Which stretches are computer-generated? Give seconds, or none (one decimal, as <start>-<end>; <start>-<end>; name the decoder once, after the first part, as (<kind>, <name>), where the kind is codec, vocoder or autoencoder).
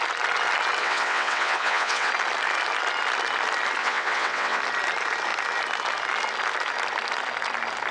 0.8-2.1 (vocoder, WaveNeXt); 3.8-4.6